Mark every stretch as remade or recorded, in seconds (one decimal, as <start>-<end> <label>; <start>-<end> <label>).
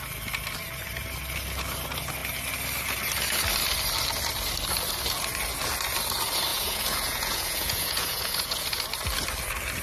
0.0-6.5 recorded; 6.5-8.8 remade; 8.8-9.8 recorded